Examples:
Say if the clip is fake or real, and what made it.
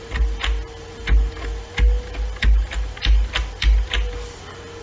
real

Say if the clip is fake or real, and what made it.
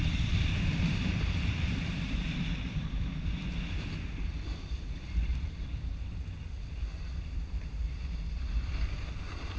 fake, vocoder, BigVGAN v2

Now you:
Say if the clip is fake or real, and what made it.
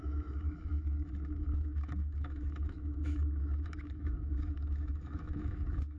fake, autoencoder, DAC-VAE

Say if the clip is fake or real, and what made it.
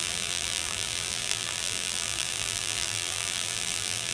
fake, vocoder, BigVGAN v2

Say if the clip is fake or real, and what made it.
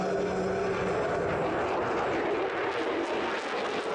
real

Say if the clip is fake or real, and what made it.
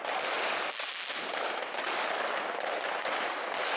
real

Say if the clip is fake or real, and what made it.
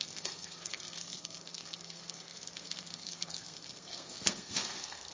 fake, codec, SNAC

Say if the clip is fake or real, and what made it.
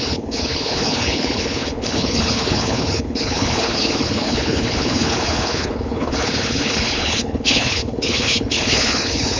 fake, codec, HILCodec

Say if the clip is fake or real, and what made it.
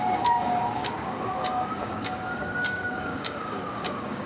fake, codec, DAC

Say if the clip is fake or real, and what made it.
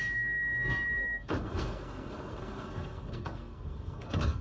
fake, codec, SNAC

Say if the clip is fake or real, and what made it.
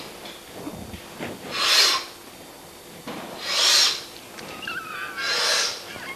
real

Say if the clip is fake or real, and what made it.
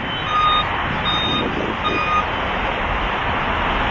real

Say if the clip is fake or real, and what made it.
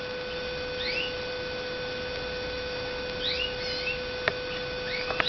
real